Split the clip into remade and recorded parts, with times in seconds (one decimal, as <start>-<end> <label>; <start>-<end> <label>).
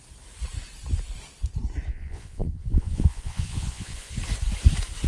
0.0-1.9 recorded; 1.9-4.1 remade; 4.1-5.1 recorded